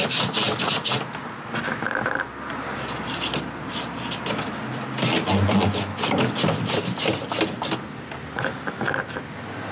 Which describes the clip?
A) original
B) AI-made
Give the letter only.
A